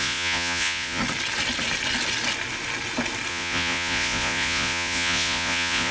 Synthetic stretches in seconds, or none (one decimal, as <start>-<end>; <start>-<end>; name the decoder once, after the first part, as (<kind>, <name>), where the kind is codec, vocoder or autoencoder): 0.0-1.0 (vocoder, Vocos); 3.3-5.9

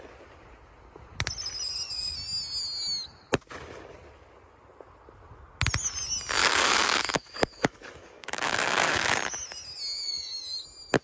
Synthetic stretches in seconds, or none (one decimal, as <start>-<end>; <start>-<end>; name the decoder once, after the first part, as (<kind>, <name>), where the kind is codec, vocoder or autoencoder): 6.4-9.1 (codec, DAC)

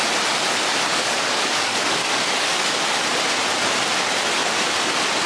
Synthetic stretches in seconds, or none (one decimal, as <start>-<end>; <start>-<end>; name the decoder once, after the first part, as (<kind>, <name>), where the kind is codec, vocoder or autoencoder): 0.9-2.8 (codec, DAC)

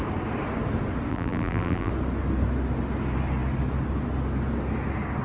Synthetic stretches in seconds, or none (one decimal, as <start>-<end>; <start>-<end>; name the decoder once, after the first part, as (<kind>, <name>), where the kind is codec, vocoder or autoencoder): 1.1-1.9 (vocoder, BigVGAN v2)

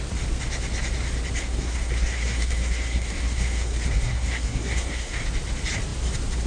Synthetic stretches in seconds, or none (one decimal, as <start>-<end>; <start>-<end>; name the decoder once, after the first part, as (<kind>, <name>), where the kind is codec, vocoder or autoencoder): 1.4-5.2 (codec, SNAC)